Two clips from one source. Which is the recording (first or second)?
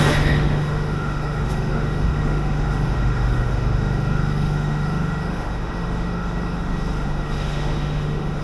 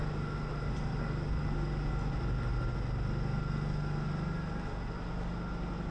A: second